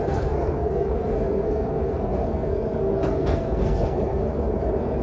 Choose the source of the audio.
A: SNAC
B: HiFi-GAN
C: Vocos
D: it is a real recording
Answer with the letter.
A